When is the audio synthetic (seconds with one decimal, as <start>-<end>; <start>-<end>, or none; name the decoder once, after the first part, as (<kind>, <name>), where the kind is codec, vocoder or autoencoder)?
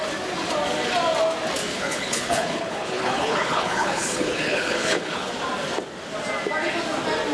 1.7-5.3 (codec, HILCodec)